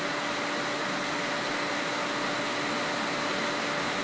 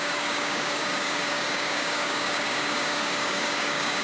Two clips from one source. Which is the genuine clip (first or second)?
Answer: first